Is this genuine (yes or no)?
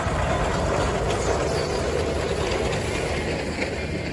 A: yes